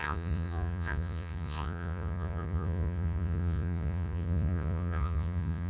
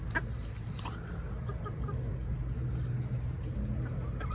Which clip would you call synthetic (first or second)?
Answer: first